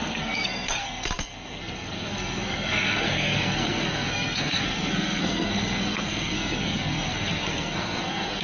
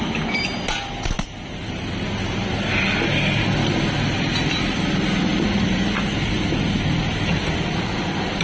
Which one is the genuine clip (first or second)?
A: second